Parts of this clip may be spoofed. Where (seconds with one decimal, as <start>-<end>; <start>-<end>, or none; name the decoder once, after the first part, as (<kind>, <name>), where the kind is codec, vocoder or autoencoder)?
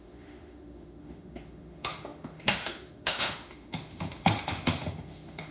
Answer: 0.0-5.5 (autoencoder, DAC-VAE)